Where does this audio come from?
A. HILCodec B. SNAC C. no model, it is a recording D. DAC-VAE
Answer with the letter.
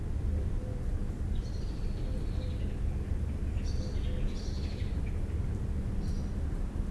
C